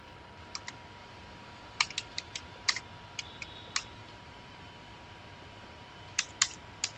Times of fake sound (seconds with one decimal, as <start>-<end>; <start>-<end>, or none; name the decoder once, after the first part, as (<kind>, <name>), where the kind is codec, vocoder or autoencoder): 1.0-2.8 (vocoder, BigVGAN v2); 4.0-6.2